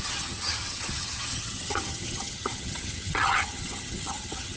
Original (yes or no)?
no